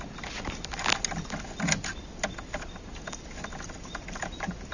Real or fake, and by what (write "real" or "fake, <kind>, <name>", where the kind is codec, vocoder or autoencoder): real